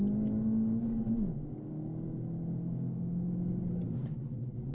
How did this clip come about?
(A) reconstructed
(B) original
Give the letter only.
B